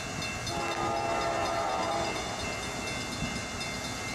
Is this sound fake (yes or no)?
no